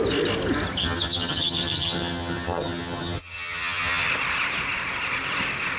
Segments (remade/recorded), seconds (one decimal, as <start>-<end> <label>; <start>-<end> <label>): 0.0-0.8 recorded; 0.8-4.1 remade; 4.1-5.8 recorded